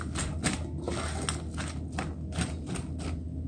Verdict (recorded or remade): recorded